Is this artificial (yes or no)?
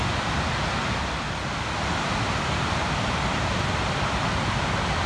no